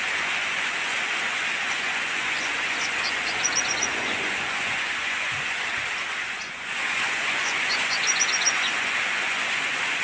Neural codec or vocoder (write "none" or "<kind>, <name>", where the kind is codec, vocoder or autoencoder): vocoder, Vocos